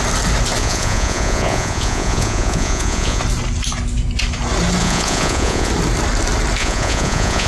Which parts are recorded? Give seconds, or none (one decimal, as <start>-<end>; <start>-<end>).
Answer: 0.0-0.6; 3.2-4.8; 5.7-6.6